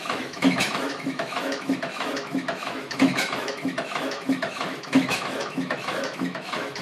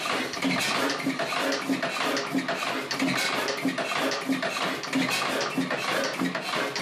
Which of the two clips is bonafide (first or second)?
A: second